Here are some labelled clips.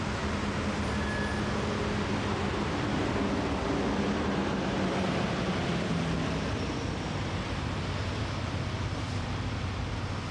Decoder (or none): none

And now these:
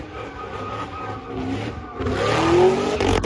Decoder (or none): none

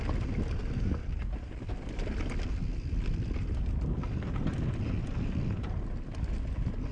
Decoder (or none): none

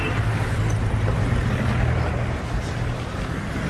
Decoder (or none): none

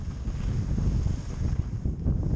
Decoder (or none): none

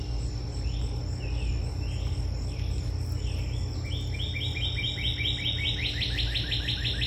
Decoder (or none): none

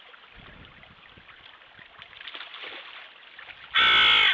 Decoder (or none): none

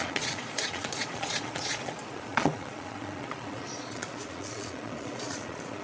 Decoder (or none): vocoder, Vocos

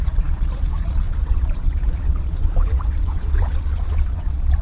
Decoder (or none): vocoder, Vocos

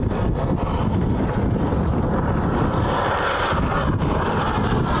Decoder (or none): none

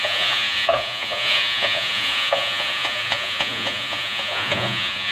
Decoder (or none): vocoder, Vocos